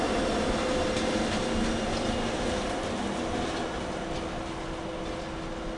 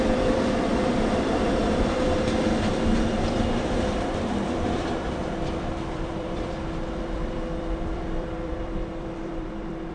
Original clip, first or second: first